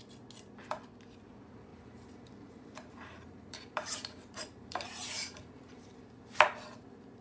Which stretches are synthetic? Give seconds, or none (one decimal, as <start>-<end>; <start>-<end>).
1.7-6.0